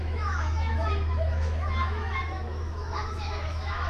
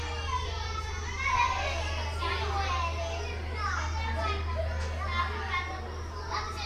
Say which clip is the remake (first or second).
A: first